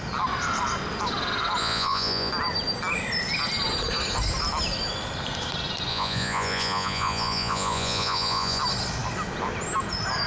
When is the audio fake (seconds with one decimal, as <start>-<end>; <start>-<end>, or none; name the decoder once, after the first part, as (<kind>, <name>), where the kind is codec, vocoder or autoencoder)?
1.6-2.3 (vocoder, Vocos); 5.9-8.6